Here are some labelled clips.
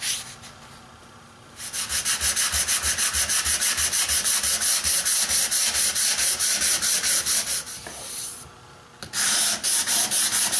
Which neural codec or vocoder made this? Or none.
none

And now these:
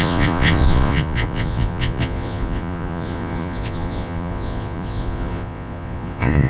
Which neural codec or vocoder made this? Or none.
vocoder, Vocos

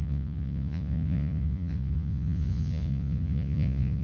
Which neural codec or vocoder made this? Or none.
vocoder, Vocos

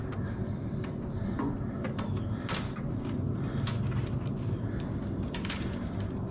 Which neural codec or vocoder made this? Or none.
none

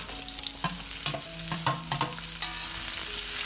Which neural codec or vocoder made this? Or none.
none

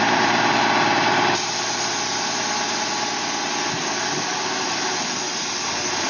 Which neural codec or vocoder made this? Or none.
none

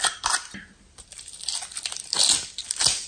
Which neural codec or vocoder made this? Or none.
none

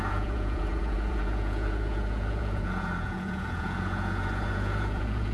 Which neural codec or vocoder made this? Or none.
vocoder, Vocos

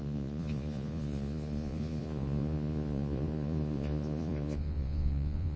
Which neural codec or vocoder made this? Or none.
vocoder, Vocos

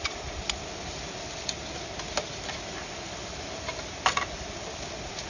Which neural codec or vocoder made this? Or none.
none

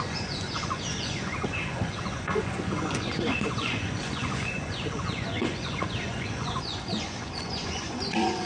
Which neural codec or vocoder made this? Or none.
vocoder, Vocos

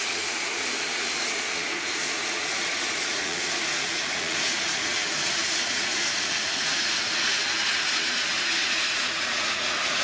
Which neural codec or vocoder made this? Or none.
vocoder, Vocos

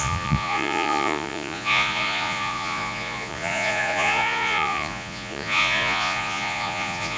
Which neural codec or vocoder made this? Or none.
vocoder, Vocos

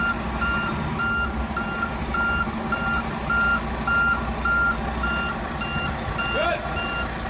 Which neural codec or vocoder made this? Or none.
none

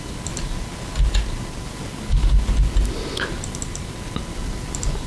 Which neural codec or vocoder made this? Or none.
none